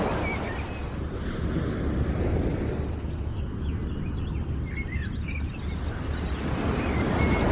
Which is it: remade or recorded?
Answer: recorded